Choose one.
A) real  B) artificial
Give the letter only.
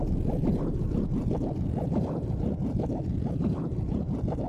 A